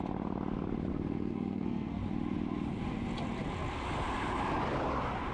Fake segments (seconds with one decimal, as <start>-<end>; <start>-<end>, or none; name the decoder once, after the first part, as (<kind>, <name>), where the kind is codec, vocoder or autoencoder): 0.9-2.0 (codec, SNAC)

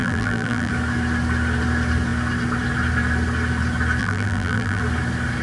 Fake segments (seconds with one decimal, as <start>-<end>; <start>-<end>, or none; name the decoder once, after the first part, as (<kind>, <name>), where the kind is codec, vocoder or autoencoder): 0.0-0.7 (vocoder, BigVGAN v2); 4.0-4.8

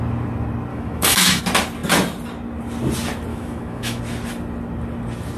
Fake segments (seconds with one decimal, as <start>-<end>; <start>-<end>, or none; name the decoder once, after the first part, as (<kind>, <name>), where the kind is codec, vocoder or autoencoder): 0.7-1.4 (autoencoder, DAC-VAE); 3.3-4.0